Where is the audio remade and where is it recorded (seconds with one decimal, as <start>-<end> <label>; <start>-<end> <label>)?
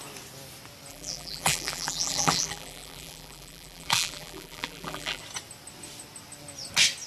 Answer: 0.0-0.9 recorded; 0.9-5.2 remade; 5.2-7.1 recorded